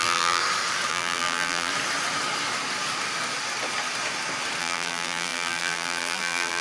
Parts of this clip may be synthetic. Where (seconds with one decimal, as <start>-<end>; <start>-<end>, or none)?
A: 0.0-0.4; 0.9-1.7; 4.6-6.6